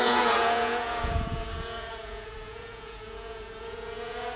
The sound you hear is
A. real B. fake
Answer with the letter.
B